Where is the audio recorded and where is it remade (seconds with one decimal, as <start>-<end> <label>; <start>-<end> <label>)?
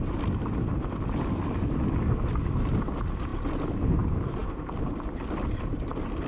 0.0-6.3 recorded